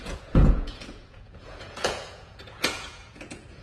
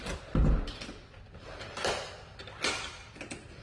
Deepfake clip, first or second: first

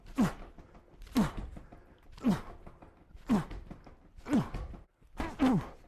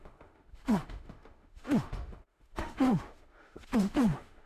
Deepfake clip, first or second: second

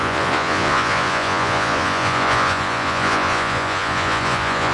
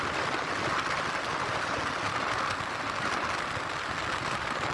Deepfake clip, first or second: first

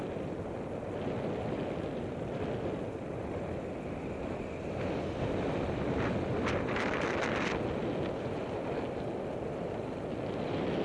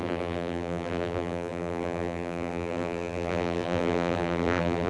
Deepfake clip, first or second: second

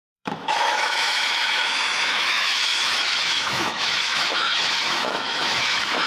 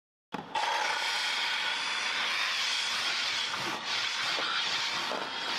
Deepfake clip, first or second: first